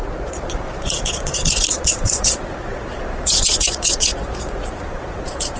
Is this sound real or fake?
fake